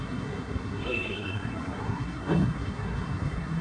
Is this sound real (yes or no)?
no